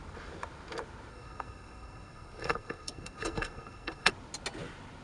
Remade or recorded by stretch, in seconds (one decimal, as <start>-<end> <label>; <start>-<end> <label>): 0.0-1.1 recorded; 1.1-4.1 remade; 4.1-5.0 recorded